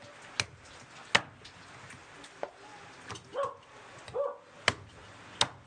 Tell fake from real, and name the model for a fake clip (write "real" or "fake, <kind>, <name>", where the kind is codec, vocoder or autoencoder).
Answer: real